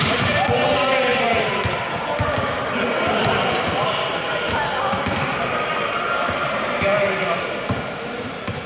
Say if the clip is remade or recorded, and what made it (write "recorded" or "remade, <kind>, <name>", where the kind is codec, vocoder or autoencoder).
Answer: recorded